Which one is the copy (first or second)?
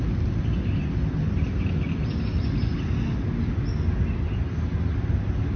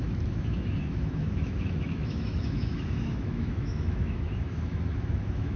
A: second